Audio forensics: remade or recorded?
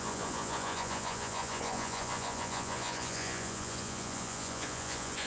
remade